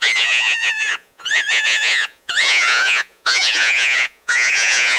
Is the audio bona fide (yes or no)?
no